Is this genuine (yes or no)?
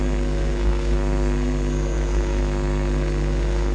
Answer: no